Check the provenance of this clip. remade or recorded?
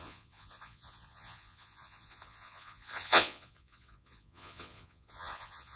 remade